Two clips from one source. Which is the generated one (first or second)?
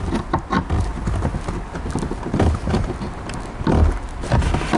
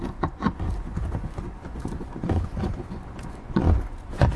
second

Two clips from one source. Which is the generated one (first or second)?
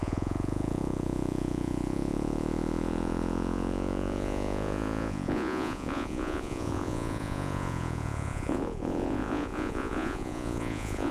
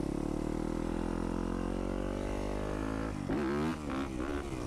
first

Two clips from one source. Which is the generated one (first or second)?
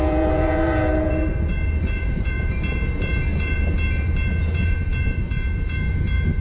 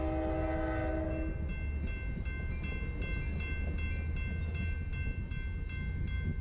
first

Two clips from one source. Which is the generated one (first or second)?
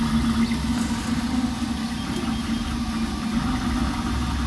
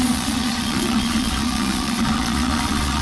second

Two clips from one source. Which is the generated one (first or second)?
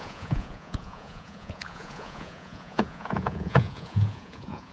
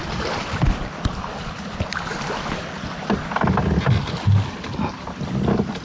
first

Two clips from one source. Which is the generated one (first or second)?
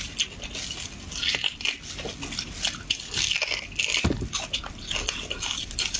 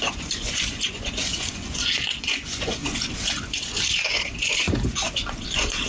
second